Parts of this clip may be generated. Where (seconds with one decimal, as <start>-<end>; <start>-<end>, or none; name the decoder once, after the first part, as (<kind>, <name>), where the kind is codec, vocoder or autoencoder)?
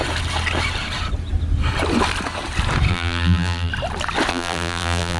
2.9-3.7 (vocoder, BigVGAN v2); 4.3-5.2